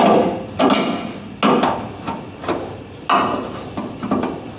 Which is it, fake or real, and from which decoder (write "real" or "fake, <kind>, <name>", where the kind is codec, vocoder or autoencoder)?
real